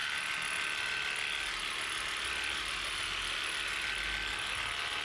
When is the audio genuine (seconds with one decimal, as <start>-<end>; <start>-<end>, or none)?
0.0-5.0